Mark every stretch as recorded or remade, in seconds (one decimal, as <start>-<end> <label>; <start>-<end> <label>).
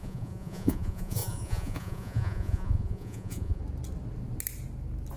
0.0-3.6 remade; 3.6-5.2 recorded